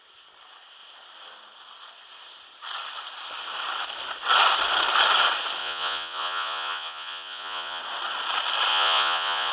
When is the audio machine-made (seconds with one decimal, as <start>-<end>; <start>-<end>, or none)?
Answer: 5.6-7.8; 8.7-9.5